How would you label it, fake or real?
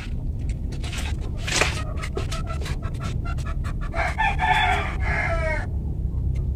real